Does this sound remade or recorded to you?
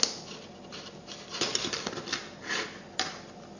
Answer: recorded